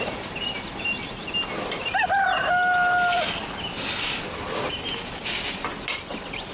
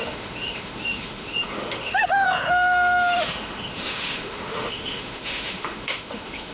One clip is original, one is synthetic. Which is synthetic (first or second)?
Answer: second